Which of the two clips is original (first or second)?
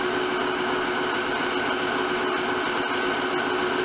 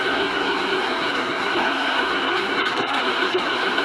first